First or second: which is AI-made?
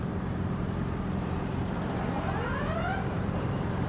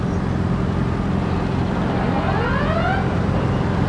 first